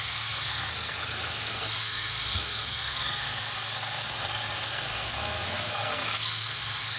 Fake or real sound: fake